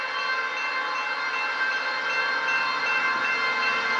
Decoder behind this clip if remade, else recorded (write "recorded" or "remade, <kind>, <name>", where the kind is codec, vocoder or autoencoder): recorded